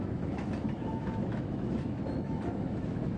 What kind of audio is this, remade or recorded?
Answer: remade